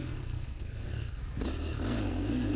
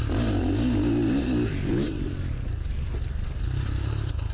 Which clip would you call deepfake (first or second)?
first